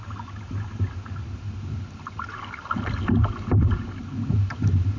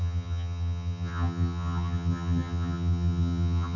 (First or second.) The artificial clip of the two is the second